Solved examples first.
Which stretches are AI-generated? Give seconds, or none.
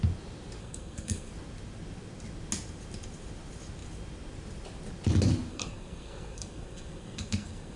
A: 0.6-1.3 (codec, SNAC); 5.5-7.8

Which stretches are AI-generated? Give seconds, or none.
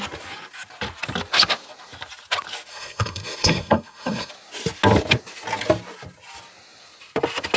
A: 2.7-4.3 (codec, SNAC)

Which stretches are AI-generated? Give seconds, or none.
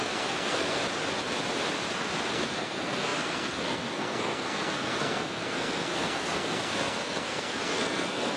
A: 0.0-0.8 (codec, SNAC); 2.3-8.4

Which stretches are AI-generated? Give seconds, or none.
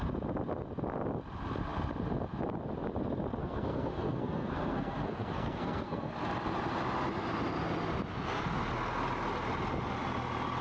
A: 3.4-6.1 (codec, SNAC)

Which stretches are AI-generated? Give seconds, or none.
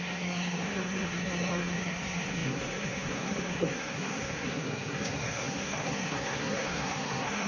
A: 0.0-7.5 (codec, SNAC)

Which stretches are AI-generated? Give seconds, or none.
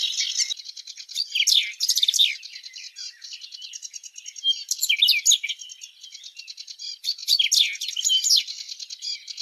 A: none